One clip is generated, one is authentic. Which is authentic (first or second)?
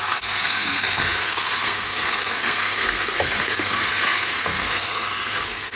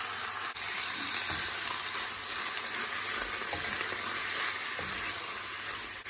second